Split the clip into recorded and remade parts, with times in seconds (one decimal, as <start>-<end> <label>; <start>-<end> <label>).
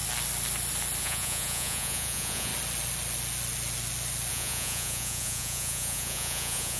0.0-1.0 recorded; 1.0-2.5 remade; 2.5-4.3 recorded; 4.3-6.8 remade